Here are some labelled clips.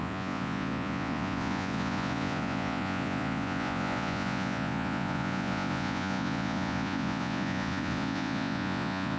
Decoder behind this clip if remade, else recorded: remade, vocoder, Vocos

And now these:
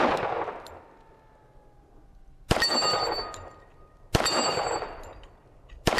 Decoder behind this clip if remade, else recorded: recorded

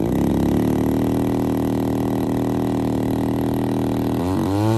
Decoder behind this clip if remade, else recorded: recorded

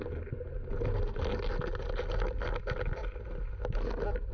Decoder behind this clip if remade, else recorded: recorded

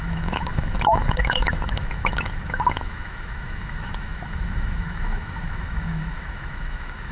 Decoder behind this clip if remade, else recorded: remade, autoencoder, DAC-VAE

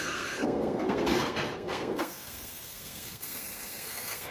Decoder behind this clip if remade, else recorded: remade, codec, SNAC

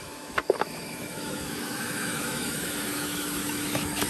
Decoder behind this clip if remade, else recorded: remade, autoencoder, DAC-VAE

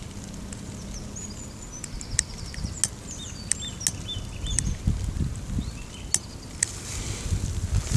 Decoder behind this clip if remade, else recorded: recorded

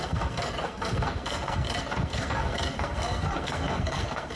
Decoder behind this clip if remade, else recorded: remade, codec, SNAC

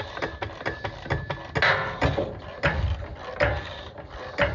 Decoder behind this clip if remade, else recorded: recorded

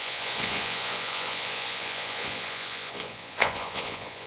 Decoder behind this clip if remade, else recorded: remade, vocoder, Vocos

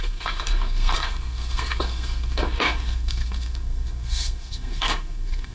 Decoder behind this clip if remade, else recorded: remade, codec, SNAC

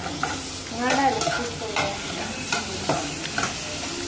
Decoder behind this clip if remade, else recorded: recorded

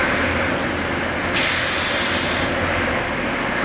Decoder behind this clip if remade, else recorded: recorded